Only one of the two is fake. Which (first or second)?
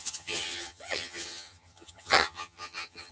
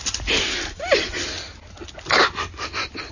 first